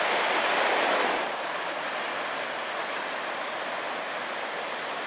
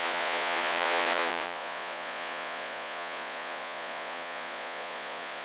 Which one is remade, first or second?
second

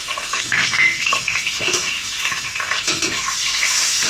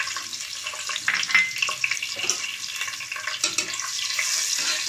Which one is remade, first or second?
first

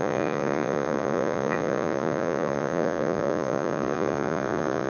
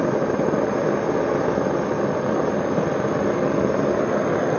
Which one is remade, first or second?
first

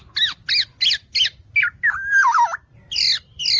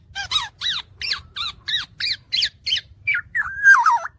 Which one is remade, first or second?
second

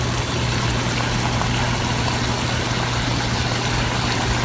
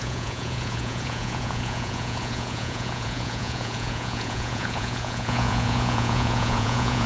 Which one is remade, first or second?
second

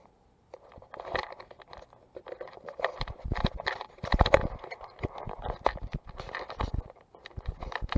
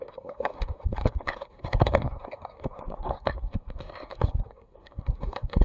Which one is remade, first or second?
second